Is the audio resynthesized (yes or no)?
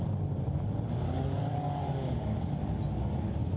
no